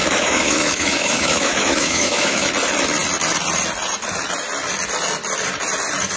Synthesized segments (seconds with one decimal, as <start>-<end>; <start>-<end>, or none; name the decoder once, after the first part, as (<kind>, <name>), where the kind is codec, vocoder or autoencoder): 0.0-2.5 (autoencoder, DAC-VAE)